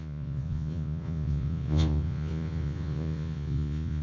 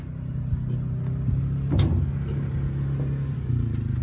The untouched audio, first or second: second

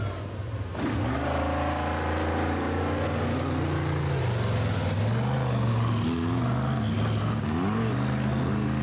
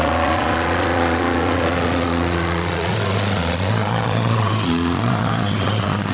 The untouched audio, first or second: first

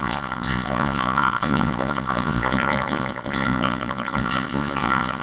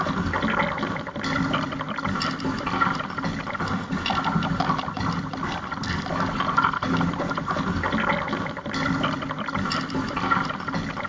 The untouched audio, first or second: second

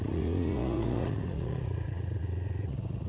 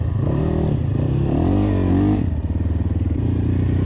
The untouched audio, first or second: second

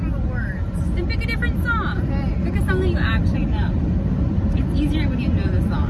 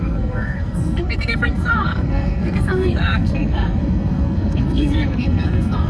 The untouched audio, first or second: first